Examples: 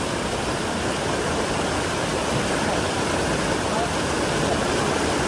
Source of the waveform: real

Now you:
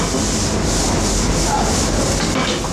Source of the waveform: real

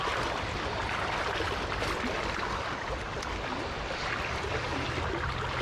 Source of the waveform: real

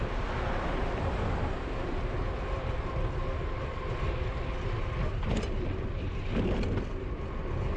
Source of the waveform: real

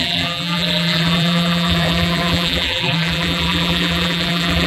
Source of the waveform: fake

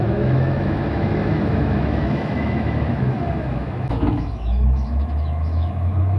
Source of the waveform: fake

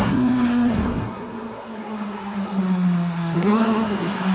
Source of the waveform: fake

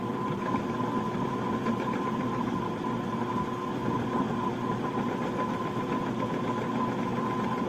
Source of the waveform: fake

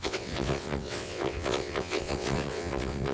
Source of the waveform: fake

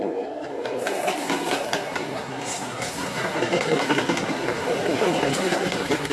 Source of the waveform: fake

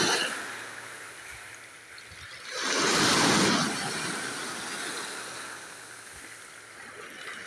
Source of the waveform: real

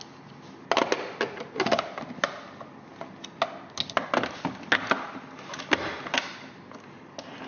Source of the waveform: real